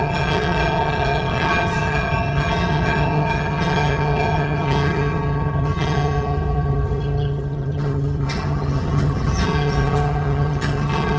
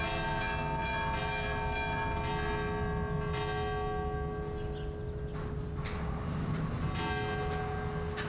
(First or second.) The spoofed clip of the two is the first